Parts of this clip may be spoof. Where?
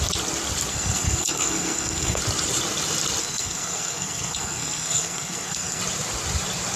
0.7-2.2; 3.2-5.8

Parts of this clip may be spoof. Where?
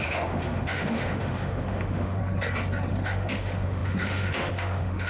0.0-2.2; 2.9-5.1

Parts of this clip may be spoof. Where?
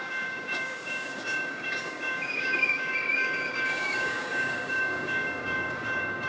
0.0-6.3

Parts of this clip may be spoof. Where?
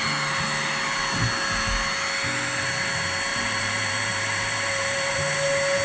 3.3-5.1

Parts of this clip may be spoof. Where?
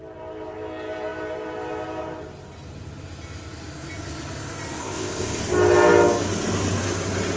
4.8-5.4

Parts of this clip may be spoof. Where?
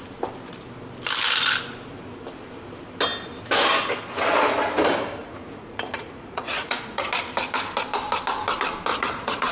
5.2-7.1; 8.9-9.5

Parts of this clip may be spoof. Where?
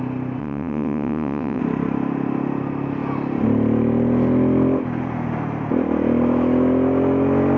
0.4-1.6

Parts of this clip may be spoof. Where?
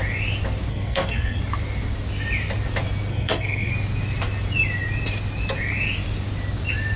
0.7-1.4; 3.1-3.7